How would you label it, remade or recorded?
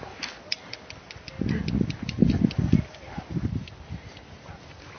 recorded